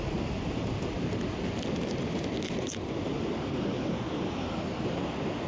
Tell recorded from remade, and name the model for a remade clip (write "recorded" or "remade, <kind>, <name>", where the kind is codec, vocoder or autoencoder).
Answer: recorded